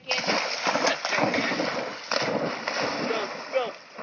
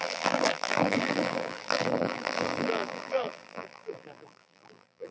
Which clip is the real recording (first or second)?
first